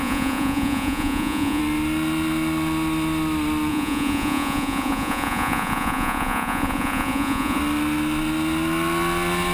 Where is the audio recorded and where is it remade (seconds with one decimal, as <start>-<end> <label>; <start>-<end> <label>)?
0.0-1.6 remade; 1.6-3.7 recorded; 3.7-7.6 remade; 7.6-9.5 recorded